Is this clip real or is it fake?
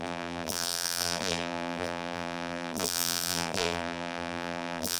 fake